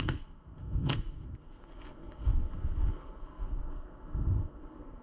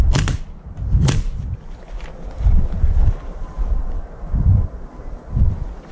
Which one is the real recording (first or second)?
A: second